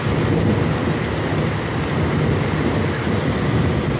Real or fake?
real